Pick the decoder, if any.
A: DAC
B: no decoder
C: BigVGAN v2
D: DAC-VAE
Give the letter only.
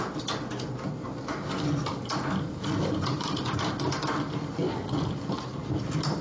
B